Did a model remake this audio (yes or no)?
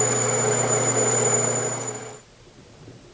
no